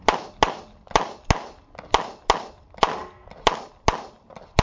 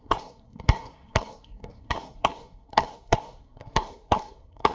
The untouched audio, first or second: first